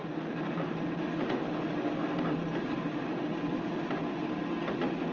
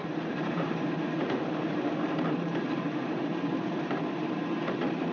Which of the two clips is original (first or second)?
first